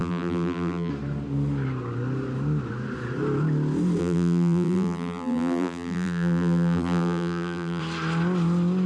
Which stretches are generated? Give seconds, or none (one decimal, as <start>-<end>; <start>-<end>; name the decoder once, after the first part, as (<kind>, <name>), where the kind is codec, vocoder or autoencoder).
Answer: 0.0-0.9 (vocoder, BigVGAN v2); 4.0-7.8